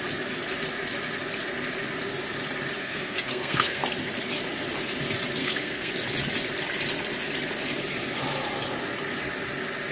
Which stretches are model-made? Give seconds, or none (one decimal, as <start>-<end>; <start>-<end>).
2.8-3.8; 5.4-5.9